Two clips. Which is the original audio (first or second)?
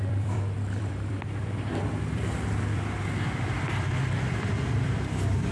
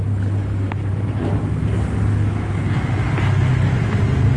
second